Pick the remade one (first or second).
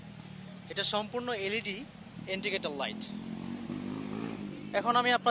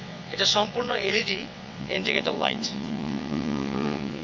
second